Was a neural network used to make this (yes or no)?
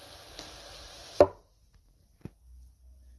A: no